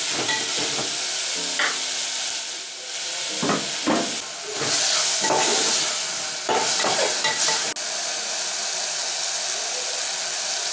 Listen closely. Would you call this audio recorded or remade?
recorded